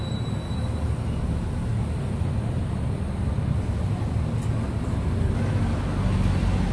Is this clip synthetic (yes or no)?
no